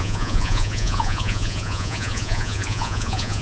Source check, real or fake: fake